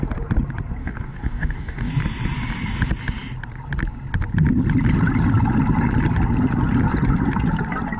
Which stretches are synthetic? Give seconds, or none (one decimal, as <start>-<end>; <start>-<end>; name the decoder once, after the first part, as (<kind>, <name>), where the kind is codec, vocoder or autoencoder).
0.8-1.9 (codec, DAC)